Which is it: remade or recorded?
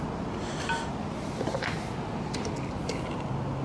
recorded